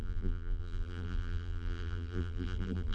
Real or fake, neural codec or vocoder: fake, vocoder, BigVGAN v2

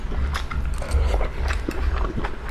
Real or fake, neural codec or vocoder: real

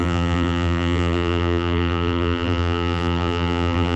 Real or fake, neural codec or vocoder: fake, vocoder, BigVGAN v2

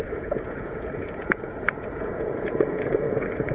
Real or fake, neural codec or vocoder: fake, vocoder, Vocos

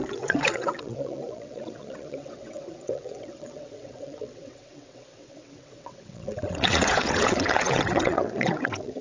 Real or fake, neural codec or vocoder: fake, vocoder, WaveNeXt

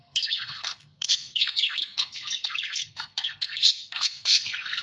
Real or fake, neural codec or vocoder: fake, codec, SNAC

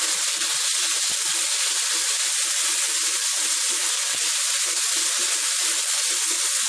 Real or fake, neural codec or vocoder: real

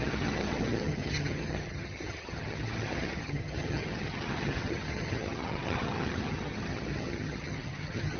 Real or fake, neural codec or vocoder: fake, vocoder, HiFi-GAN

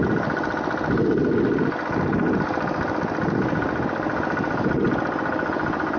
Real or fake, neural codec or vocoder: real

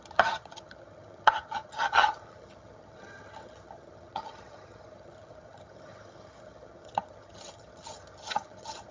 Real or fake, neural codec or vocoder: fake, vocoder, HiFi-GAN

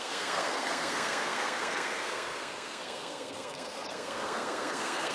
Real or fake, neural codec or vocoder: fake, codec, SNAC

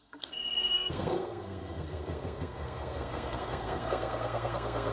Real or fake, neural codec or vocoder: fake, codec, SNAC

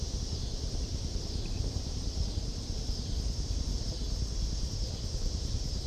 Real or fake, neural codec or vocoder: fake, vocoder, BigVGAN v2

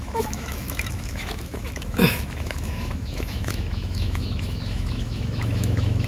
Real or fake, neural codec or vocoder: fake, autoencoder, DAC-VAE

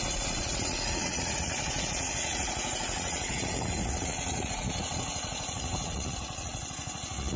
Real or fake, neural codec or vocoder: fake, vocoder, Vocos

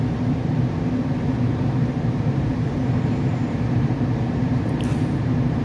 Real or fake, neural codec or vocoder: fake, vocoder, BigVGAN v2